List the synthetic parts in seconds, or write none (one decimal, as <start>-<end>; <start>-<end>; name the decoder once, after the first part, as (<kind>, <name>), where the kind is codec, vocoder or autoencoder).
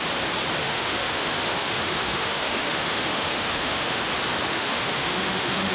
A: 0.6-4.0 (autoencoder, DAC-VAE); 4.5-5.7